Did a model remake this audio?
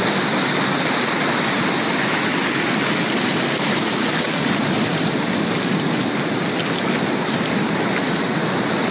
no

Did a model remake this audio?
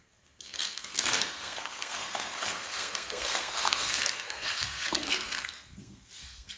yes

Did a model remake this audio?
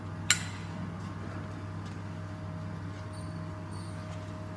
no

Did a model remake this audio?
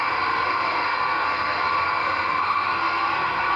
yes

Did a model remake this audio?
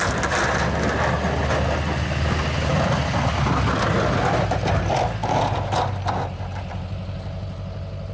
no